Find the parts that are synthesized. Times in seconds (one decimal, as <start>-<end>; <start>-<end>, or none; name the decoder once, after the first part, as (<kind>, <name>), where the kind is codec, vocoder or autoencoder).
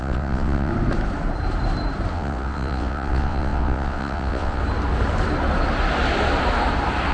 0.0-0.7 (vocoder, WaveNeXt); 2.1-4.6